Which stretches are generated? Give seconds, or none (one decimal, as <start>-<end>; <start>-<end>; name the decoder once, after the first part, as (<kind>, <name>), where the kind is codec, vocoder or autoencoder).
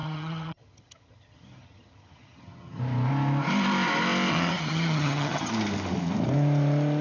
0.0-2.8 (vocoder, HiFi-GAN); 4.3-5.5